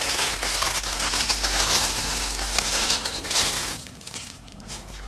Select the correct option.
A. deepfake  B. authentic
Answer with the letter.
A